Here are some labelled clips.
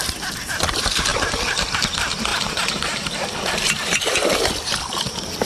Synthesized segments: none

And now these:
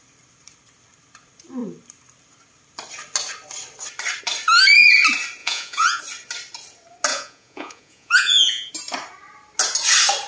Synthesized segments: 5.4-6.0; 7.1-8.7

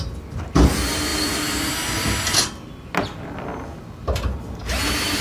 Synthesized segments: none

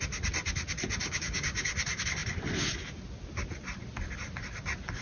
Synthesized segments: 1.0-1.7